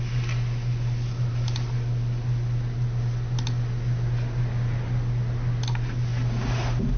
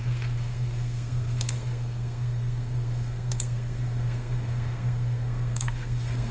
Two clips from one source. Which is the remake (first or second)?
second